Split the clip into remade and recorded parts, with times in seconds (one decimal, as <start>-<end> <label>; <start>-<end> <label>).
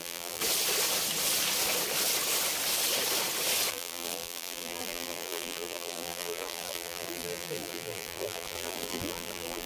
0.0-0.4 remade; 0.4-3.7 recorded; 3.7-9.7 remade